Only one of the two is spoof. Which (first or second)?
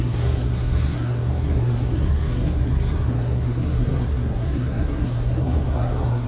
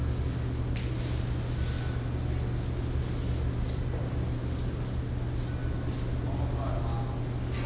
first